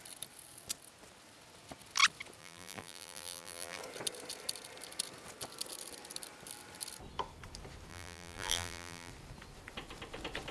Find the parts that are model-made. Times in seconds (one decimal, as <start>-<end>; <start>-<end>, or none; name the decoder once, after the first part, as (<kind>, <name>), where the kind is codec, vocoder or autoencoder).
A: 2.4-3.8 (vocoder, BigVGAN v2); 7.9-9.1